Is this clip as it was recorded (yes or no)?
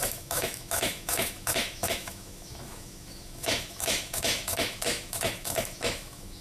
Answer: no